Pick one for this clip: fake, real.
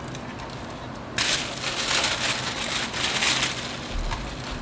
real